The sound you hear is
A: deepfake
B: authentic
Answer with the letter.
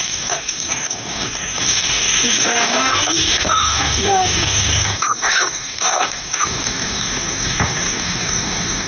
A